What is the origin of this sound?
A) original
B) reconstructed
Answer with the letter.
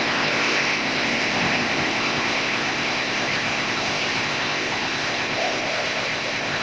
B